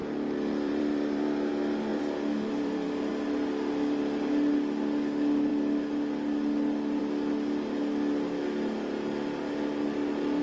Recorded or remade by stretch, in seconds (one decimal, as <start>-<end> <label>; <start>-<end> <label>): 0.0-1.5 remade; 1.5-1.9 recorded; 1.9-3.1 remade; 3.1-10.4 recorded

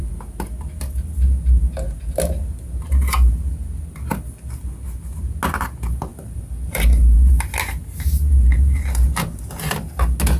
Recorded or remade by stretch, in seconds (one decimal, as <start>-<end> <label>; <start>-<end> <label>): 0.0-6.1 recorded; 6.1-7.4 remade; 7.4-10.4 recorded

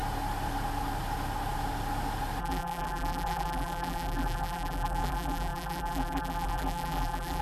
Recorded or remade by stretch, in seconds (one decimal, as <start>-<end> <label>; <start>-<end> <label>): 0.0-2.4 recorded; 2.4-7.4 remade

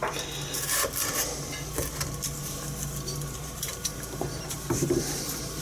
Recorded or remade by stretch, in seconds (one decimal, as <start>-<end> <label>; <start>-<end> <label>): 0.0-3.4 recorded; 3.4-5.6 remade

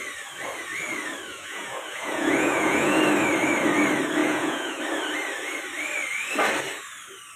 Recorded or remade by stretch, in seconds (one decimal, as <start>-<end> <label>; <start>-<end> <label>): 0.0-1.3 recorded; 1.3-3.0 remade; 3.0-4.2 recorded; 4.2-4.8 remade; 4.8-7.4 recorded

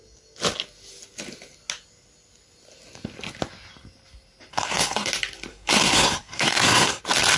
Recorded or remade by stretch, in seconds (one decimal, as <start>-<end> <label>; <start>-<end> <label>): 0.0-4.5 recorded; 4.5-5.1 remade; 5.1-5.5 recorded; 5.5-7.0 remade; 7.0-7.4 recorded

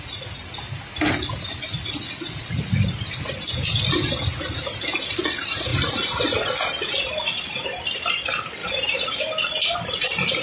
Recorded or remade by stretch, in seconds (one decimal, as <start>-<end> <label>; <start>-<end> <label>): 0.0-8.6 recorded; 8.6-9.2 remade; 9.2-10.4 recorded

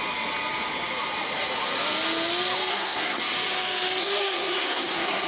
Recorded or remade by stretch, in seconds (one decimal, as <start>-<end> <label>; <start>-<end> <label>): 0.0-2.7 recorded; 2.7-3.2 remade; 3.2-4.0 recorded; 4.0-5.3 remade